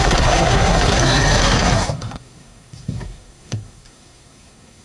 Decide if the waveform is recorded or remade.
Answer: remade